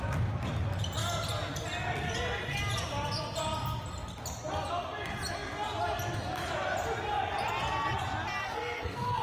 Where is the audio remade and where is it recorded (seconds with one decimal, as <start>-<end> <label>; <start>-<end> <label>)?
0.0-8.4 recorded; 8.4-9.2 remade